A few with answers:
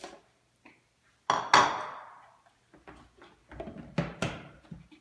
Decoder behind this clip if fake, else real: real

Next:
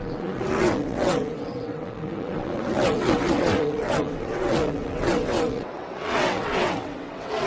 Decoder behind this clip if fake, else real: fake, vocoder, WaveNeXt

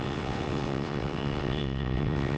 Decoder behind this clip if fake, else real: fake, vocoder, WaveNeXt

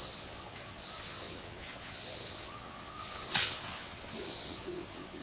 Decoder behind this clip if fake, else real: fake, vocoder, WaveNeXt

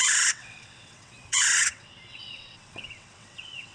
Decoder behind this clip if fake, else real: fake, vocoder, WaveNeXt